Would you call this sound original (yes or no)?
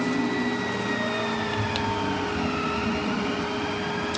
yes